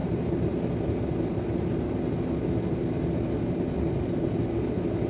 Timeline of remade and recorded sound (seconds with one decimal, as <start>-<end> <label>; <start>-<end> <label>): 0.0-0.7 remade; 0.7-5.1 recorded